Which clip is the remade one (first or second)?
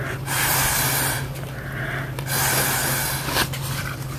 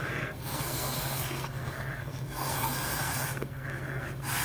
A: second